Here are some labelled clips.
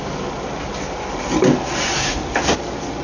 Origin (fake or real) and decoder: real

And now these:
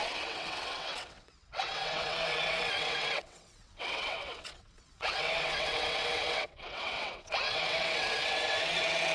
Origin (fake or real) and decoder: fake, vocoder, WaveNeXt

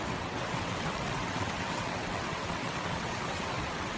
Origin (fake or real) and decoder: fake, vocoder, WaveNeXt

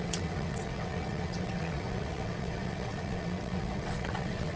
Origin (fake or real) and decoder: fake, vocoder, WaveNeXt